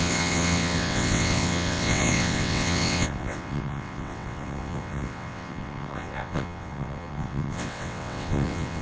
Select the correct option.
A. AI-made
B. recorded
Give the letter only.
A